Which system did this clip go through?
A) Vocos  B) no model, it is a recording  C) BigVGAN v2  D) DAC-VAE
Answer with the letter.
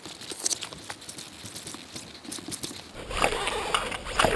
B